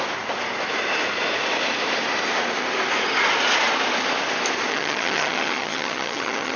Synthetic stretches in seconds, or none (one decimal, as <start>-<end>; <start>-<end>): 4.7-6.6